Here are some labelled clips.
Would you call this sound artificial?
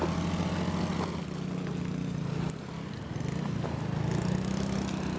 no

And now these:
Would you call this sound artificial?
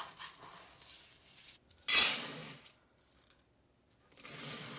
no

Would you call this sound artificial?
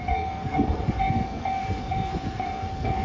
yes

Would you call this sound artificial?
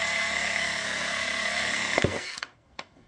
yes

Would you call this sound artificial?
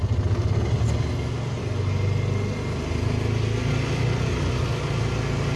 no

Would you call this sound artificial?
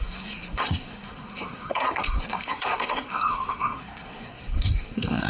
yes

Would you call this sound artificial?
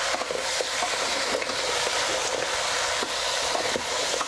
no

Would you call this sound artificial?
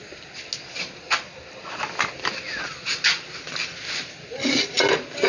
no